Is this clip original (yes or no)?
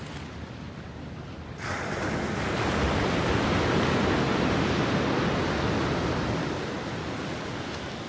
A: yes